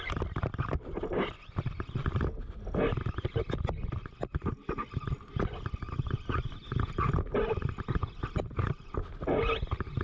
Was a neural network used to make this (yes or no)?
no